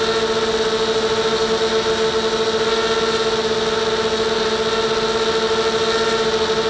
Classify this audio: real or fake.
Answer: real